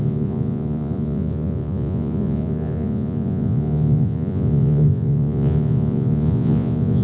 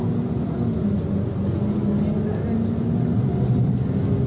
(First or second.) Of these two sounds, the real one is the second